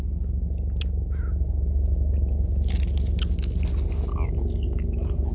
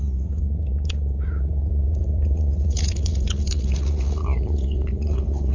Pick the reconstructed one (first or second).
second